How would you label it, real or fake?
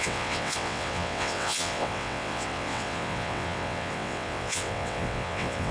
fake